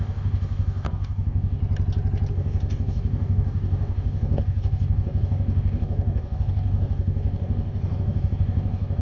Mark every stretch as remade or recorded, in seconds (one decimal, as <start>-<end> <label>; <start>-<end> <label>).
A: 0.0-1.6 remade; 1.6-2.3 recorded; 2.3-9.0 remade